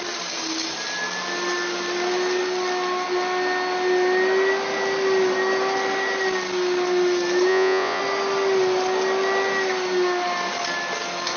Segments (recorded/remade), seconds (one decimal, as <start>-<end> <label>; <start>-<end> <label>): 0.0-7.5 recorded; 7.5-8.0 remade; 8.0-11.4 recorded